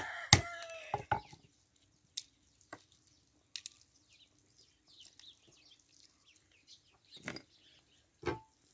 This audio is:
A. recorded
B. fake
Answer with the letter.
A